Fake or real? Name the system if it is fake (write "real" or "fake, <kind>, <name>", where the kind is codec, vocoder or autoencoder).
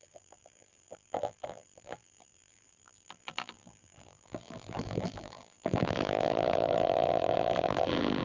fake, vocoder, BigVGAN v2